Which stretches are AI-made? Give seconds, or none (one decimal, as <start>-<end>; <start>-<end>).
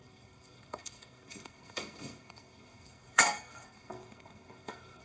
0.0-5.0